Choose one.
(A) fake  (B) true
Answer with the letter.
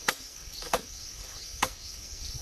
A